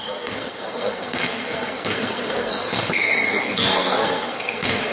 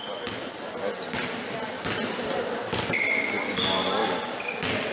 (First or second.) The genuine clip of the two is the second